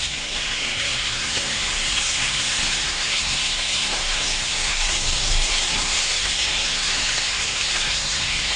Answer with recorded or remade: remade